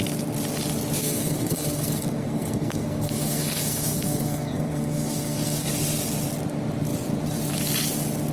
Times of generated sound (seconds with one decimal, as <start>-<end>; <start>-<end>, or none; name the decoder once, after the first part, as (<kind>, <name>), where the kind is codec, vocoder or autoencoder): 1.0-5.7 (codec, SNAC)